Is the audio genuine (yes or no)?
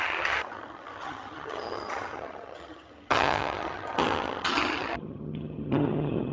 no